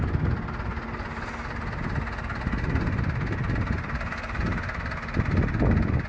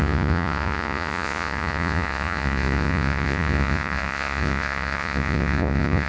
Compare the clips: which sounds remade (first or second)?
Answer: second